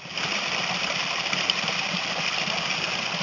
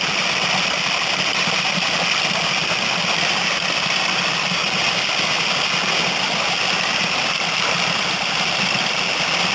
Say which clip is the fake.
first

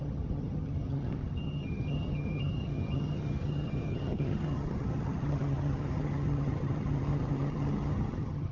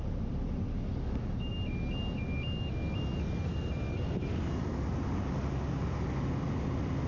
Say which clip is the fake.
first